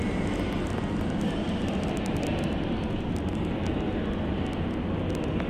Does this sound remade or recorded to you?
recorded